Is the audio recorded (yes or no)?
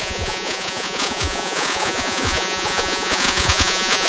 no